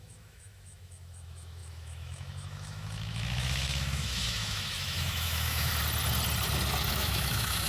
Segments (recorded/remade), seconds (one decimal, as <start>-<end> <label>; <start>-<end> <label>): 0.0-5.7 remade; 5.7-6.9 recorded; 6.9-7.7 remade